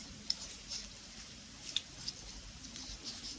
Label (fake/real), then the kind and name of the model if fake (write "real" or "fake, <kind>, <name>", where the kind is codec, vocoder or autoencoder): fake, vocoder, BigVGAN v2